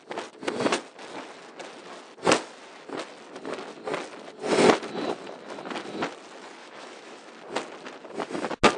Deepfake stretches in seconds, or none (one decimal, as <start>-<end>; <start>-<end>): 6.6-7.3